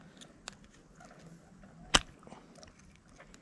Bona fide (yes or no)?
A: yes